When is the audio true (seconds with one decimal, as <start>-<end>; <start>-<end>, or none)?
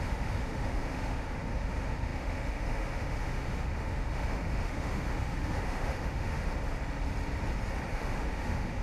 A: 6.5-7.9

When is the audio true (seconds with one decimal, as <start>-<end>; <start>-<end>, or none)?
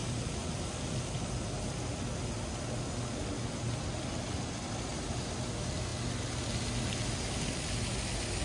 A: 0.0-8.4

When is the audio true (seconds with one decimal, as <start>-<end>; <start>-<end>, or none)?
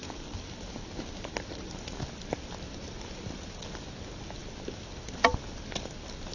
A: 0.0-6.3